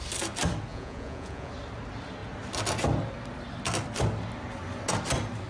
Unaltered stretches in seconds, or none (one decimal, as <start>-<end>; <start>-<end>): 0.0-0.7; 1.5-5.5